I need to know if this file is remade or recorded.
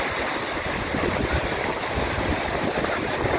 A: recorded